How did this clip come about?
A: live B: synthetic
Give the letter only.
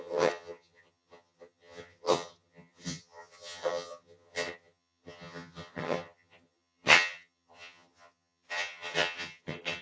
B